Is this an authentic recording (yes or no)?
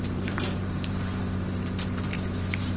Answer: no